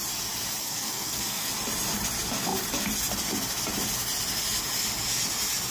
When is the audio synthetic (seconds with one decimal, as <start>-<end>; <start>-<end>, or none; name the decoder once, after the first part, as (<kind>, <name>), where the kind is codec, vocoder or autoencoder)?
0.6-1.5 (codec, SNAC)